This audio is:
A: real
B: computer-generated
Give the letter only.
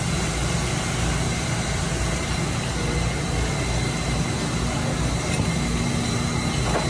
A